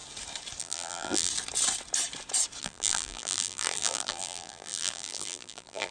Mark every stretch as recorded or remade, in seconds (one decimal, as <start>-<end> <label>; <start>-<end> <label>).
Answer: 0.0-0.6 recorded; 0.6-1.3 remade; 1.3-2.6 recorded; 2.6-5.9 remade

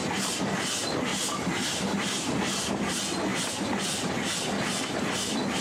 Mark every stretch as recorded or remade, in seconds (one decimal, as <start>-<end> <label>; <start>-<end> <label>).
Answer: 0.0-1.1 recorded; 1.1-2.3 remade; 2.3-5.6 recorded

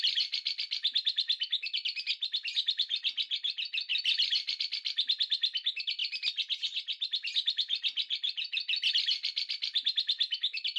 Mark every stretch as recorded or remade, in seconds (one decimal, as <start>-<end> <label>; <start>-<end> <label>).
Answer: 0.0-10.8 recorded

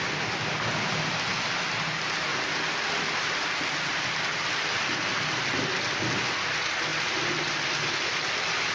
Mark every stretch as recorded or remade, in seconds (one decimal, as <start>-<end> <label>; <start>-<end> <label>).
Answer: 0.0-2.3 recorded; 2.3-4.6 remade; 4.6-8.7 recorded